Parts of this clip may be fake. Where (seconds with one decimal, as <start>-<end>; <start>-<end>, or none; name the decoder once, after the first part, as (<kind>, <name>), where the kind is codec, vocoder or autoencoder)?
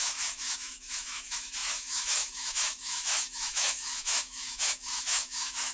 0.0-5.7 (autoencoder, DAC-VAE)